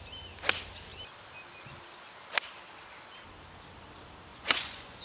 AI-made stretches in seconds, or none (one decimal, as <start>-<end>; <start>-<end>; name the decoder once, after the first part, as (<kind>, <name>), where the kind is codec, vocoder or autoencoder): 4.3-5.0 (vocoder, Vocos)